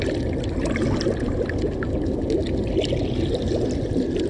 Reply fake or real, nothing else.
real